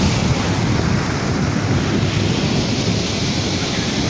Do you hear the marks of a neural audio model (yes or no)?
no